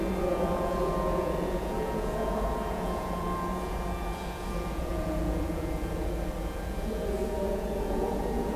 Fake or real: fake